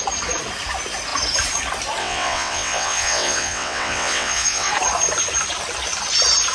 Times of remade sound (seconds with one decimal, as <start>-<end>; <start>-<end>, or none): 2.0-4.7